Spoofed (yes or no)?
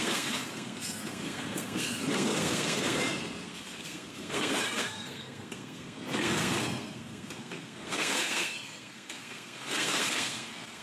yes